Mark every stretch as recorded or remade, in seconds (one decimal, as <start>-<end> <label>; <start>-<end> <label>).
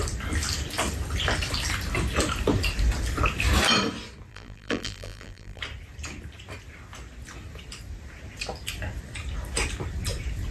0.0-4.3 recorded; 4.3-5.6 remade; 5.6-10.5 recorded